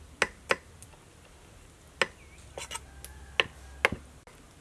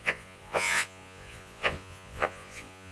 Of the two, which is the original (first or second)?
first